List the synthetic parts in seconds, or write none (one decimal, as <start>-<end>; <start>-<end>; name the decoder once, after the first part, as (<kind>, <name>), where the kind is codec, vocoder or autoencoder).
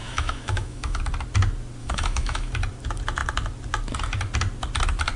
0.0-1.0 (autoencoder, DAC-VAE); 1.8-2.5